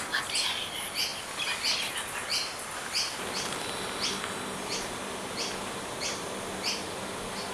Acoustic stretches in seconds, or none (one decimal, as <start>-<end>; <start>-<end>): 0.0-7.5